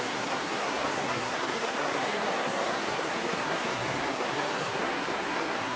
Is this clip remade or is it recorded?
remade